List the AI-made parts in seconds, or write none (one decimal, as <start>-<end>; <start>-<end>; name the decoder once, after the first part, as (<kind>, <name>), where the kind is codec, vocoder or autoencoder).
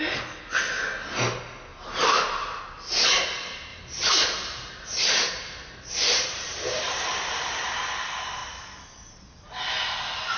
1.7-2.6 (vocoder, BigVGAN v2); 3.7-7.7